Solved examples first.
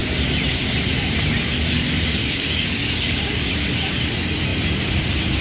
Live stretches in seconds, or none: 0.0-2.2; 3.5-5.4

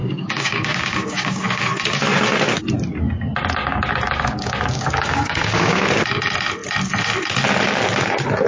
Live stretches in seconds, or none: 1.6-3.6; 5.8-8.5

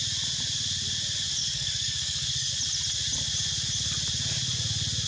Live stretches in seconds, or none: 0.0-1.4; 2.5-5.1

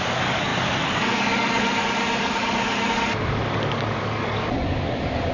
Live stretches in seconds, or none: none

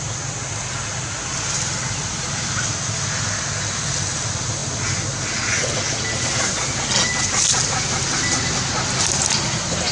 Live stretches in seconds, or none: 0.0-9.9

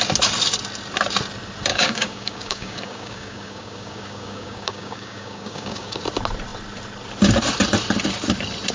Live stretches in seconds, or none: 0.0-1.7; 6.0-8.7

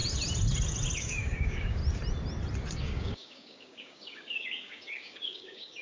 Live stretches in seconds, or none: 0.0-1.0; 1.8-2.8